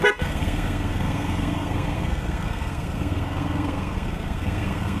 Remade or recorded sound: remade